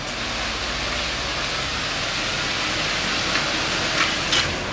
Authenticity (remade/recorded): recorded